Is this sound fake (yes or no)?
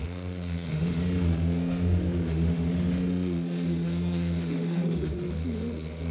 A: yes